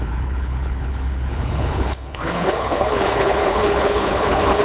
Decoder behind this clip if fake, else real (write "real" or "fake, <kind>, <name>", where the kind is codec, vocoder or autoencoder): fake, codec, HILCodec